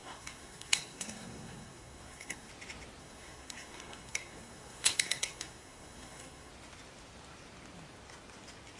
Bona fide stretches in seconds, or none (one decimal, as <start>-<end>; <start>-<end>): 2.5-3.0; 6.5-8.8